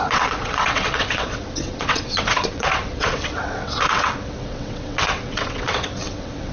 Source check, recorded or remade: remade